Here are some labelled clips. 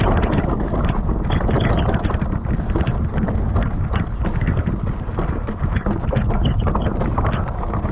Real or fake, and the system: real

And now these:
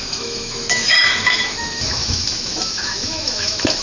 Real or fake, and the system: fake, autoencoder, DAC-VAE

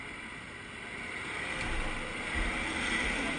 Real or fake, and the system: real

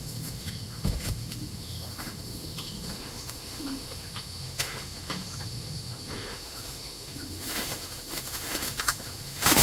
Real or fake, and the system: fake, autoencoder, DAC-VAE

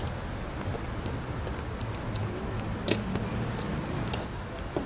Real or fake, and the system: real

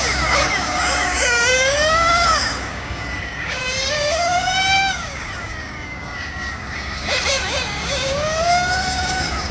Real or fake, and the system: fake, codec, DAC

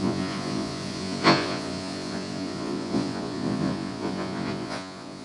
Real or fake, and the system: fake, vocoder, Vocos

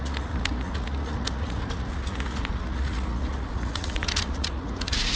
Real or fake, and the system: fake, vocoder, Vocos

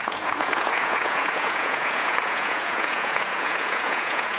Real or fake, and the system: fake, vocoder, Vocos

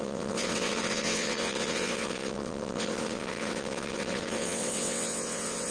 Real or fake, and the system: fake, vocoder, WaveNeXt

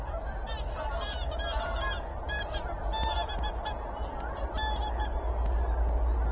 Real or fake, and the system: real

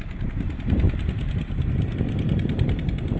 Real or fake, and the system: real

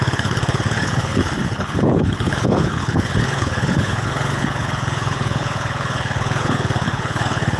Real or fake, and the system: fake, codec, HILCodec